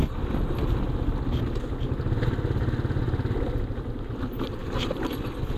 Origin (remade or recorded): recorded